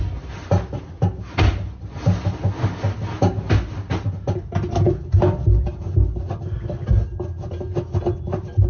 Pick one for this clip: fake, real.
real